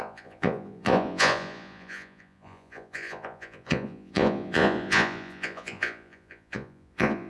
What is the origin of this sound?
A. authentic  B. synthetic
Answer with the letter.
B